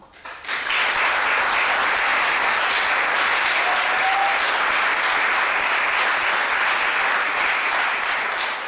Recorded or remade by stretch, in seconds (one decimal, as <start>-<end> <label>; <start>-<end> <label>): 0.0-8.7 recorded